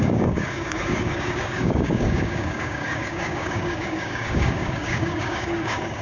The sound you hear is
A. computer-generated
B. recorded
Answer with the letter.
A